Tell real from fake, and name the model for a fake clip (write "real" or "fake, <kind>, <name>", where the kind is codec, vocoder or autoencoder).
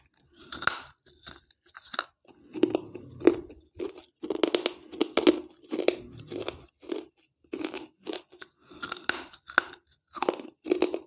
real